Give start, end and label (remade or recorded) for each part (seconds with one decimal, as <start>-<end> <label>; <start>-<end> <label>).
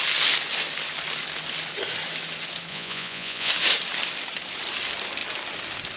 0.0-2.7 recorded; 2.7-3.5 remade; 3.5-6.0 recorded